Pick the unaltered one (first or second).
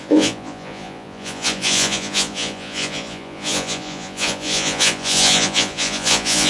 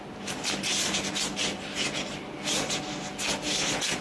second